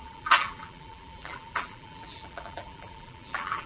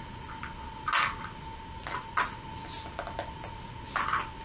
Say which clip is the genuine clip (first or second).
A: second